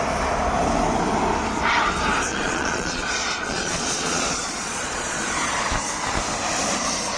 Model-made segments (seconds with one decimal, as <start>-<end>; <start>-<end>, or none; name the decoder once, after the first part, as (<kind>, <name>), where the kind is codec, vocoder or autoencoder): 2.3-5.2 (vocoder, Vocos)